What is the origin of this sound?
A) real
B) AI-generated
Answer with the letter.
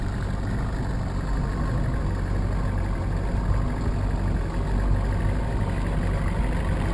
A